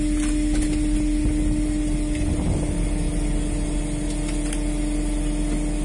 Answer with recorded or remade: recorded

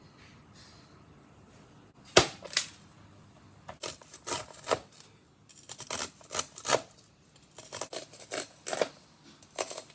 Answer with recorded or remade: recorded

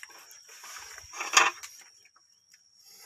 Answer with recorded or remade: recorded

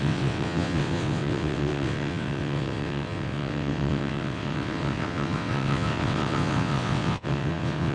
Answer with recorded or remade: remade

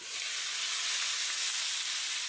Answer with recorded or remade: recorded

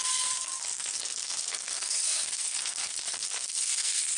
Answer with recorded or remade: remade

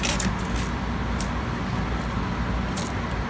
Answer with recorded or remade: recorded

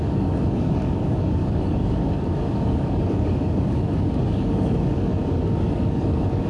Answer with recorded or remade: remade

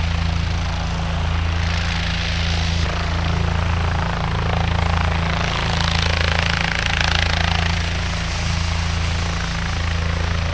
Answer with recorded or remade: recorded